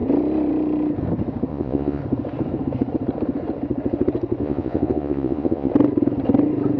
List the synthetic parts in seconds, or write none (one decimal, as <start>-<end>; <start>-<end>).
1.5-2.0; 4.4-5.7